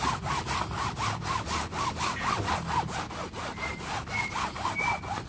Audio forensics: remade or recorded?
recorded